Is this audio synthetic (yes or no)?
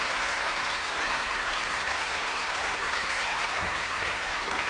yes